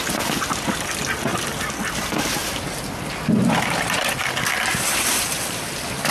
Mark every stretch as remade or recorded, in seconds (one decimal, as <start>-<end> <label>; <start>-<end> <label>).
0.0-2.4 recorded; 2.4-4.2 remade; 4.2-6.1 recorded